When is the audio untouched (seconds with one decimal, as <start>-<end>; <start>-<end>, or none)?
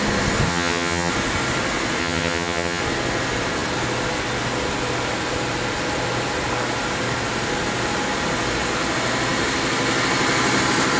0.0-0.5; 1.1-2.0; 2.8-11.0